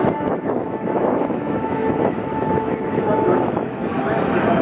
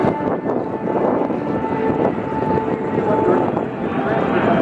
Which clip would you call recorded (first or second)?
second